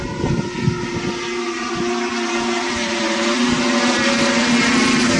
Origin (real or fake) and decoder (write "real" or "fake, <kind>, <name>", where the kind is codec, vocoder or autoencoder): real